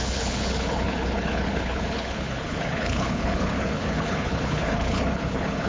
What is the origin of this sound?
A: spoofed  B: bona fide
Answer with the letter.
A